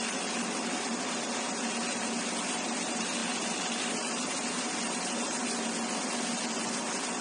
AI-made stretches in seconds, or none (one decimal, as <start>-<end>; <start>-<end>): none